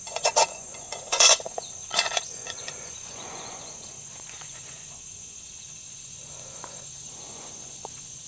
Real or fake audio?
fake